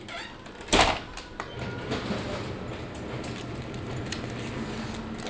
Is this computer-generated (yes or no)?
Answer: no